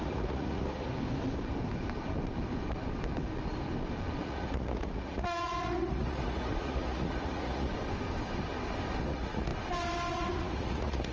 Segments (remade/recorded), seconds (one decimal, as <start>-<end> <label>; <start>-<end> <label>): 0.0-0.9 remade; 0.9-4.2 recorded; 4.2-7.7 remade; 7.7-9.0 recorded; 9.0-9.5 remade; 9.5-10.1 recorded; 10.1-11.1 remade